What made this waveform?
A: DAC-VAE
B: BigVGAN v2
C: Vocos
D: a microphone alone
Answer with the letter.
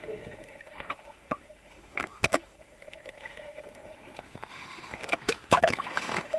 A